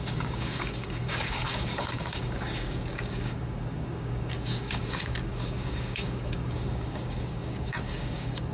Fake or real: fake